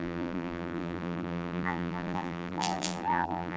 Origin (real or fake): fake